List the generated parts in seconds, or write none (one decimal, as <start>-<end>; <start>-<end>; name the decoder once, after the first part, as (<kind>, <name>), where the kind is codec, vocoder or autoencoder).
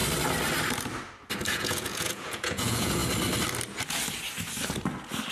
1.5-3.0 (vocoder, Vocos)